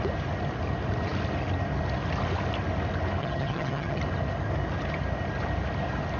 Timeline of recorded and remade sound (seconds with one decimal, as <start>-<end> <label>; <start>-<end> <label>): 0.0-3.2 recorded; 3.2-4.0 remade; 4.0-6.2 recorded